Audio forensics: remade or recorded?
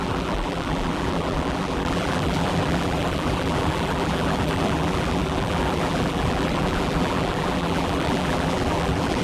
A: remade